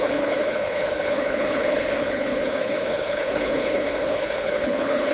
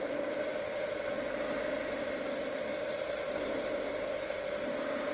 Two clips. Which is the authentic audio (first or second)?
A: second